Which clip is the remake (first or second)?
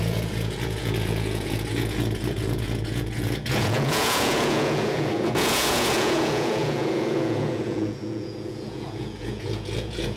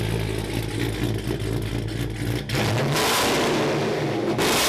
first